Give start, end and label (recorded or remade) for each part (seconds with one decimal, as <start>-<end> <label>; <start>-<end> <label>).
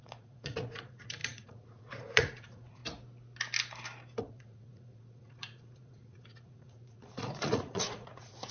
0.0-2.8 remade; 2.8-4.2 recorded; 4.2-8.5 remade